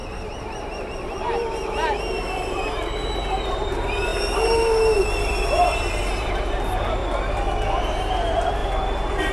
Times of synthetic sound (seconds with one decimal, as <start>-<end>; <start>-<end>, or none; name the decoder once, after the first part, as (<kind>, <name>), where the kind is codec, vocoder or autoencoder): 0.0-7.0 (vocoder, BigVGAN v2); 7.8-9.3